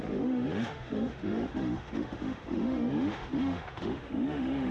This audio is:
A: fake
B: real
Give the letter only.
A